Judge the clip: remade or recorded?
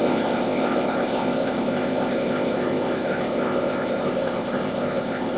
remade